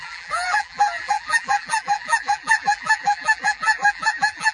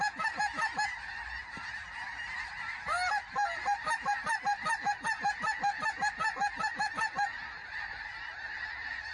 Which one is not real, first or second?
first